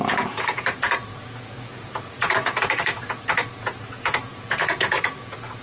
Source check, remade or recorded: remade